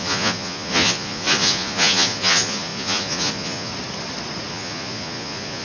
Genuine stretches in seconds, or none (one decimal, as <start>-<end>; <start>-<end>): 3.7-4.5